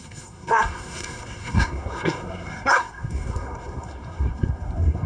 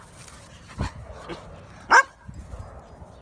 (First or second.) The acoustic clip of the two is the second